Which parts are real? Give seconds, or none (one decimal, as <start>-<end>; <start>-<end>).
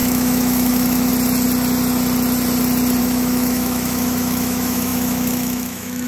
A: 1.1-3.0